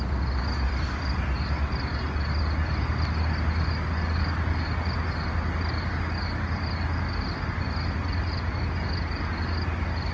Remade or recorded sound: recorded